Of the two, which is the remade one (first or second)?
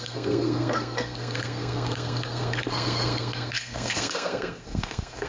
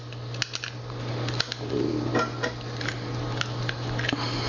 first